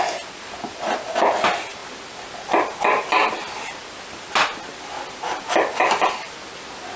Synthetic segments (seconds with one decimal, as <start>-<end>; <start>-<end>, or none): none